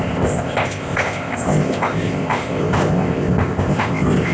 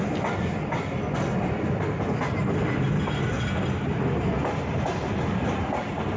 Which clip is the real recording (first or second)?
second